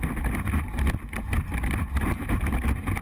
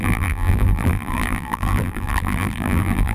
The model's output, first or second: second